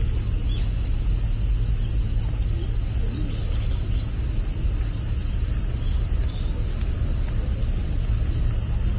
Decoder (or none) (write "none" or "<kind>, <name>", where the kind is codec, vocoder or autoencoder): none